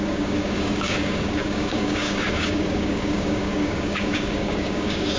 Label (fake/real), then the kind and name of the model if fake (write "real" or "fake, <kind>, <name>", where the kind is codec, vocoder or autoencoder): fake, codec, DAC